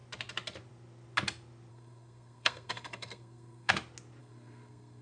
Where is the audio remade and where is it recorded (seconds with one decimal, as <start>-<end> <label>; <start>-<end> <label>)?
0.0-1.7 recorded; 1.7-3.7 remade; 3.7-4.2 recorded; 4.2-5.0 remade